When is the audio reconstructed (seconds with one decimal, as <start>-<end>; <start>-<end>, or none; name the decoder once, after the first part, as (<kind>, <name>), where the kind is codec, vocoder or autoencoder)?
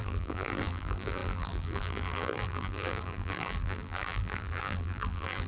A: 0.0-5.5 (vocoder, BigVGAN v2)